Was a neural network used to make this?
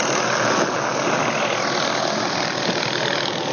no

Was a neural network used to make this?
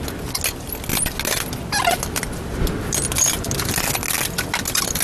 no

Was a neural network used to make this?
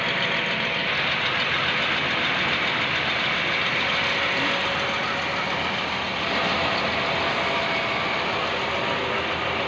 no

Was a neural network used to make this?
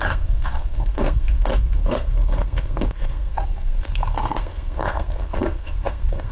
yes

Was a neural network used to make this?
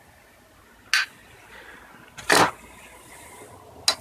no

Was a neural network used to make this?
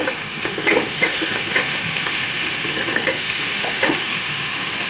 yes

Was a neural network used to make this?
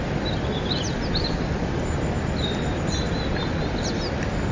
no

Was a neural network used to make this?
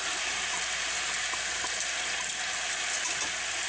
no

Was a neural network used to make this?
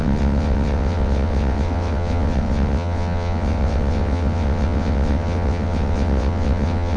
yes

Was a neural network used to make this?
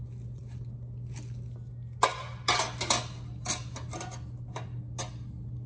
no